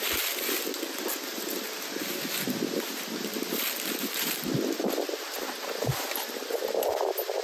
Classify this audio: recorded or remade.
recorded